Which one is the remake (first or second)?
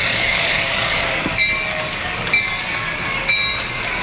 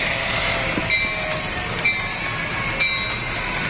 first